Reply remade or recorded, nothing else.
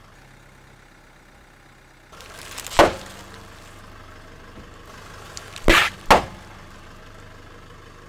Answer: recorded